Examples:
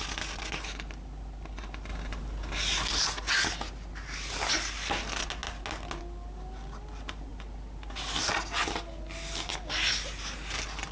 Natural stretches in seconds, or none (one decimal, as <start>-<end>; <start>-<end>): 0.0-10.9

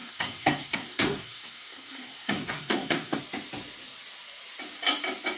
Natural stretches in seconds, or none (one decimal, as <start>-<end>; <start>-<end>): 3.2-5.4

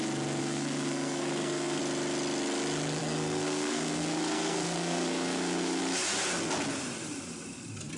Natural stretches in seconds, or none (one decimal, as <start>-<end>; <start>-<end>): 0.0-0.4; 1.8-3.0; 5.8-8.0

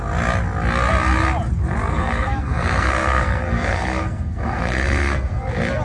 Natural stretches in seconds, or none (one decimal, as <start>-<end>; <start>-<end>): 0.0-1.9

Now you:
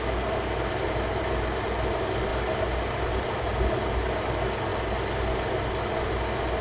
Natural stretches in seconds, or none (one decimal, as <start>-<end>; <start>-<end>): 0.0-6.6